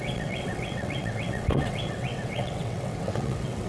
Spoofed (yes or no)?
yes